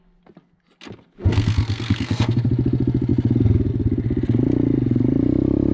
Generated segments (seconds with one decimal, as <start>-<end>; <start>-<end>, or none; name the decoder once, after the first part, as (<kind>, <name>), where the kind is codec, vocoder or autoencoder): 1.3-2.5 (codec, SNAC)

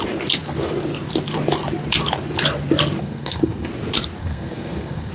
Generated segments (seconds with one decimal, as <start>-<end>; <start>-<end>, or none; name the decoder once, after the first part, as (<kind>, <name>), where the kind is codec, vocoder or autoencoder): 3.0-3.7 (codec, SNAC); 4.2-5.1

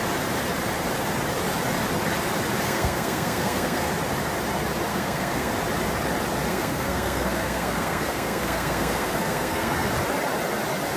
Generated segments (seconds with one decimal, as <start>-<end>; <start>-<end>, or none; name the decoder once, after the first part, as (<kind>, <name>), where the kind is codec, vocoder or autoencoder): 2.6-3.9 (codec, SNAC); 4.9-5.5; 6.5-9.9

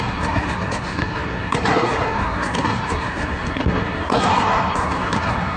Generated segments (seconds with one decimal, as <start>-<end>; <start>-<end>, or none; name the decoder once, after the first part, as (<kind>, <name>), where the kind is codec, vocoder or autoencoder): 0.0-5.6 (codec, SNAC)

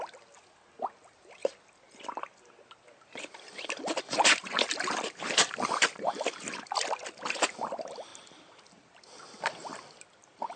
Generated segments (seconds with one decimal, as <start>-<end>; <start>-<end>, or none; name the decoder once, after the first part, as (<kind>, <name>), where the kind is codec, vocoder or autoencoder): none